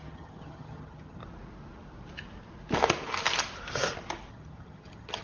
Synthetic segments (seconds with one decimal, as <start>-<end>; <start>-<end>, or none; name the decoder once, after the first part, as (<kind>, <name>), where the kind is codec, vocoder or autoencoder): 0.0-1.2 (vocoder, HiFi-GAN); 4.3-5.2